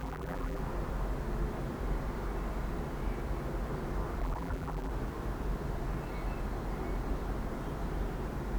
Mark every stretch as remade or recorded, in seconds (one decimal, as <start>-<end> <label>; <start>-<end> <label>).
0.0-0.6 remade; 0.6-4.2 recorded; 4.2-4.9 remade; 4.9-8.6 recorded